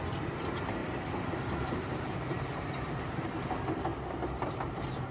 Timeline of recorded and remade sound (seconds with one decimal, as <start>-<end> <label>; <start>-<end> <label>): 0.0-0.8 recorded; 0.8-3.3 remade; 3.3-5.1 recorded